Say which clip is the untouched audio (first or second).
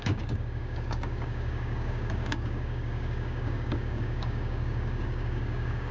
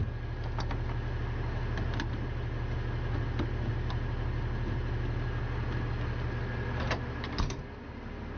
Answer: second